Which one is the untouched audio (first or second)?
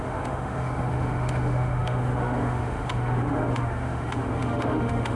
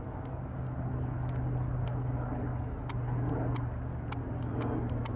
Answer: second